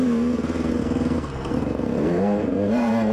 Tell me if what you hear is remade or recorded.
remade